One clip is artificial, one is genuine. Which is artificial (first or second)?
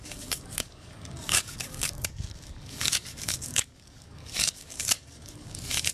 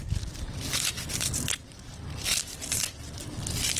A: first